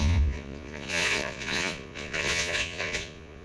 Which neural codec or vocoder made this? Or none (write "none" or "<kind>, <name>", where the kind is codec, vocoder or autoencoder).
vocoder, Vocos